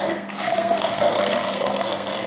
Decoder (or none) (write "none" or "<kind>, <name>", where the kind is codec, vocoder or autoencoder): codec, SNAC